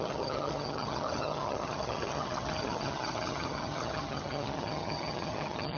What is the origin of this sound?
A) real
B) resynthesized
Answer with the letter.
B